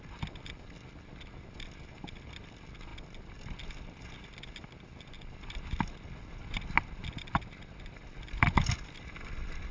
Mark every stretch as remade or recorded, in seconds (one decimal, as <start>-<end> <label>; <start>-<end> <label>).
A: 0.0-9.7 recorded